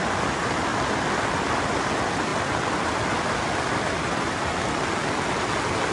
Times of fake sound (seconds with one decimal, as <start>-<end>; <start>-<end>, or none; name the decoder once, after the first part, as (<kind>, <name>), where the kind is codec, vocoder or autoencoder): none